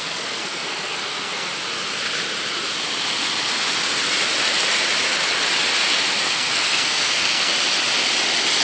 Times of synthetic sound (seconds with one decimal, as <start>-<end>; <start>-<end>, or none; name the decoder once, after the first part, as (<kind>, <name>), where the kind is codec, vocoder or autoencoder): 0.0-1.5 (codec, SNAC); 6.2-7.5